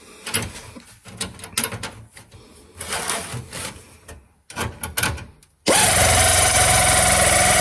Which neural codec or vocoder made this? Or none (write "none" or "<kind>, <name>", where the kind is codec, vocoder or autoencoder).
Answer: none